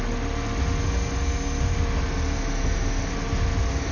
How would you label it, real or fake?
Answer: real